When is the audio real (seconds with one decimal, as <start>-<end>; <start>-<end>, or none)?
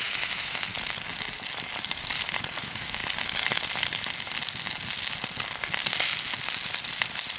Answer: 0.7-2.6; 3.0-7.4